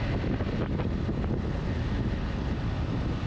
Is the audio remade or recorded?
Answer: recorded